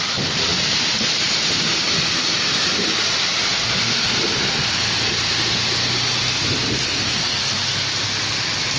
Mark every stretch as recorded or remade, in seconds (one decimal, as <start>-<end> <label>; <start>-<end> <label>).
0.0-8.8 recorded